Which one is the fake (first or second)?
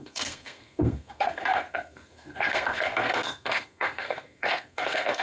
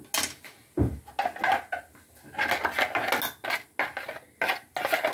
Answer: first